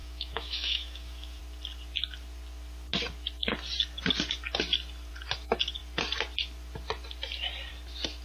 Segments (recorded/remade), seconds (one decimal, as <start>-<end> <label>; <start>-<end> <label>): 0.0-1.4 remade; 1.4-8.2 recorded